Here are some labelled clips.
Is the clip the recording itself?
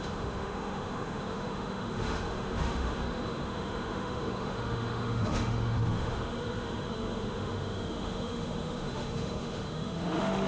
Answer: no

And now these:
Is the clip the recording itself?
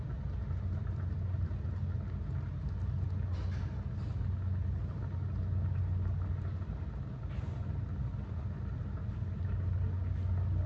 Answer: yes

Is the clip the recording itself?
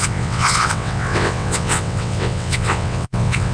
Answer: no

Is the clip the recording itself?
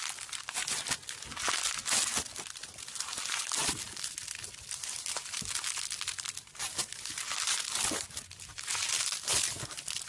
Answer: yes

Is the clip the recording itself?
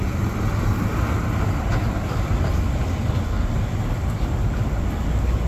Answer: yes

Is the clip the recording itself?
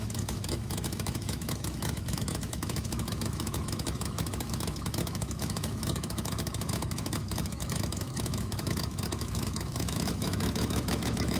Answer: no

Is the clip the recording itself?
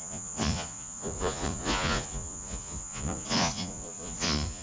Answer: no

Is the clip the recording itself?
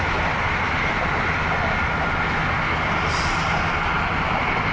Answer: yes